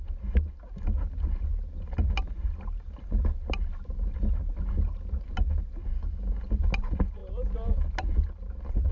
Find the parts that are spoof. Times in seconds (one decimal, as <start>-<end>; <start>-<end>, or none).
5.8-6.4